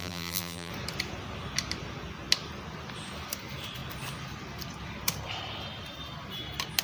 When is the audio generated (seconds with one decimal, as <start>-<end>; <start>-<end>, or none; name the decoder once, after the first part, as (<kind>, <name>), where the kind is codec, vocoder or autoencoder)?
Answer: 0.0-0.7 (vocoder, BigVGAN v2)